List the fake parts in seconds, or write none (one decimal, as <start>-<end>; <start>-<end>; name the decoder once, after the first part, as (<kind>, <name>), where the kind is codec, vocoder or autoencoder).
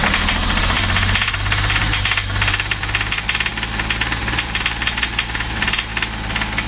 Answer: 0.6-3.5 (vocoder, BigVGAN v2); 4.2-5.9